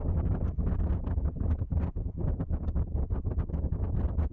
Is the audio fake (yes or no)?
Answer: no